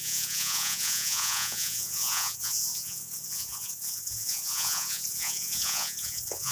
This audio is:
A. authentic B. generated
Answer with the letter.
B